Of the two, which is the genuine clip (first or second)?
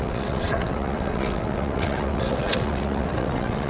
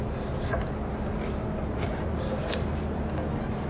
second